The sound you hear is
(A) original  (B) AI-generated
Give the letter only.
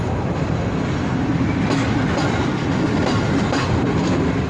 A